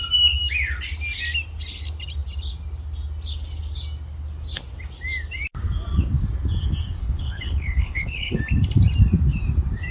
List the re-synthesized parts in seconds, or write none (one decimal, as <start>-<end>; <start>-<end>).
7.0-8.4